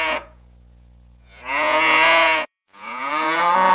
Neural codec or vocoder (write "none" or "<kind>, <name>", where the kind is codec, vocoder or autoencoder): vocoder, Vocos